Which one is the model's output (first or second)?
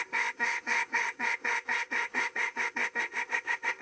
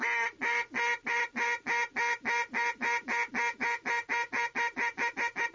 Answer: first